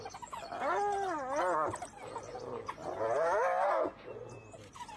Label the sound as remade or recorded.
recorded